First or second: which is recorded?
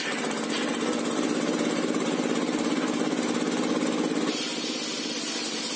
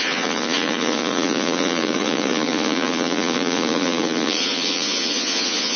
first